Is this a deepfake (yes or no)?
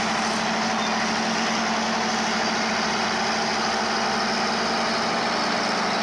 no